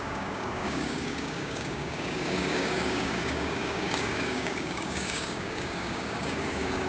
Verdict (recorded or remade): remade